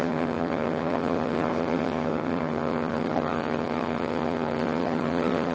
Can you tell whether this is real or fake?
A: fake